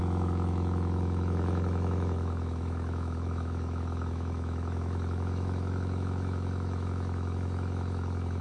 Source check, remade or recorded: remade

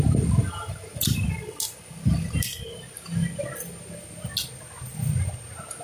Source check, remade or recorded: recorded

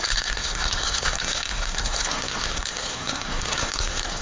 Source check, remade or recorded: remade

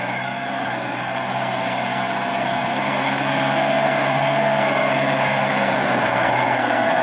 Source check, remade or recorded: remade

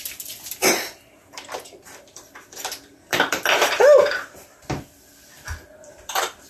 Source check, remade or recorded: remade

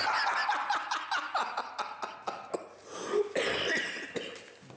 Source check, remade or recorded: recorded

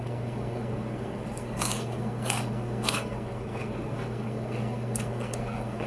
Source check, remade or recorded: remade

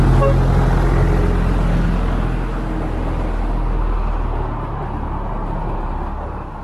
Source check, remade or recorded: recorded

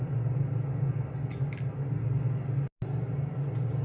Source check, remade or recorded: recorded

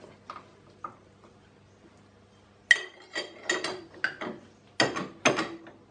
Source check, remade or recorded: recorded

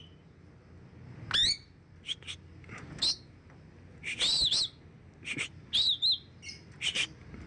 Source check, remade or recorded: recorded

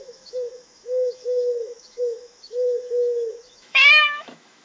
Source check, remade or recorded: remade